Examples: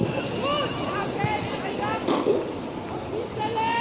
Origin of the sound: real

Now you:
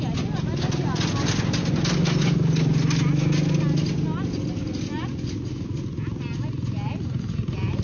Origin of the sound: real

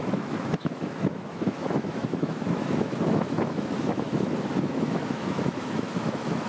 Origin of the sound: fake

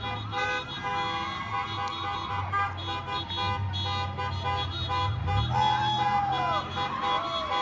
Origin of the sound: real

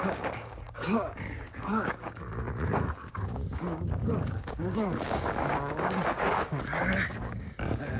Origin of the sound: fake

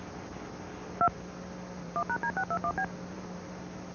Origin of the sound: real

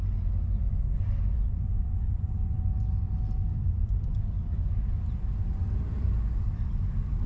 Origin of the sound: fake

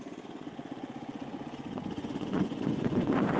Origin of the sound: fake